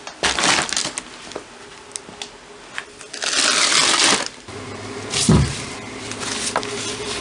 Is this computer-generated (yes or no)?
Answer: no